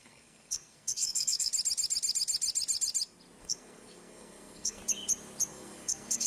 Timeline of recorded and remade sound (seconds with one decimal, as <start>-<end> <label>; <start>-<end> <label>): 0.0-1.5 remade; 1.5-3.4 recorded; 3.4-4.8 remade; 4.8-5.5 recorded; 5.5-6.3 remade